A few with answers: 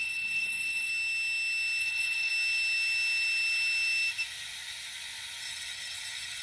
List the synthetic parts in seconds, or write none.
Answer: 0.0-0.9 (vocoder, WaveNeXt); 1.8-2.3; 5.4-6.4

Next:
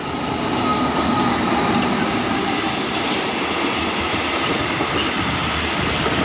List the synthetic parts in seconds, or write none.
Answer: none

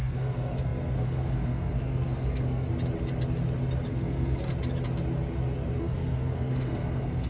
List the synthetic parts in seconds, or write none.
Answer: 0.0-2.7 (codec, SNAC); 3.9-4.5; 5.8-7.3